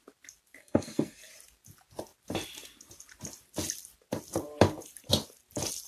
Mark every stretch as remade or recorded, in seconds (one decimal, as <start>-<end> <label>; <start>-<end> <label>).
0.0-0.6 recorded; 0.6-1.3 remade; 1.3-5.9 recorded